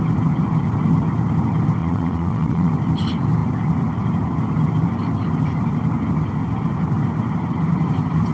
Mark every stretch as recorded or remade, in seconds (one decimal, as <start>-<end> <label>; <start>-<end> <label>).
0.0-1.8 recorded; 1.8-2.7 remade; 2.7-8.3 recorded